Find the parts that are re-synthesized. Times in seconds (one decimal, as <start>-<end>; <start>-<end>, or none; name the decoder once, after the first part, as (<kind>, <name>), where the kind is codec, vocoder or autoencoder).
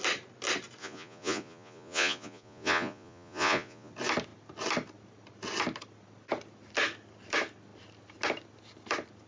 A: 0.8-3.9 (vocoder, Vocos)